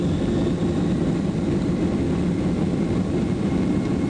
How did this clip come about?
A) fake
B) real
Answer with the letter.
B